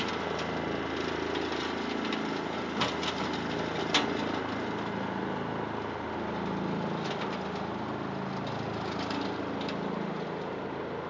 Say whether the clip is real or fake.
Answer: real